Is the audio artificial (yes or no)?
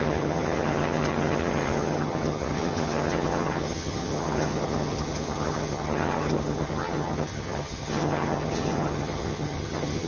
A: yes